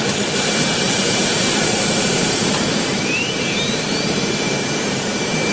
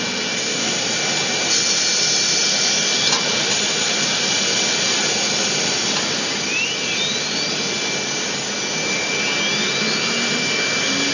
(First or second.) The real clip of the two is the second